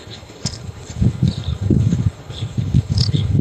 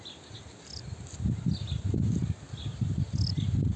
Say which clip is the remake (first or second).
first